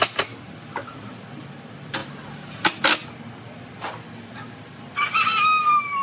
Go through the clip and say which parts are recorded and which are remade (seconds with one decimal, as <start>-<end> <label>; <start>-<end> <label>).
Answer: 0.0-2.0 remade; 2.0-5.6 recorded; 5.6-6.0 remade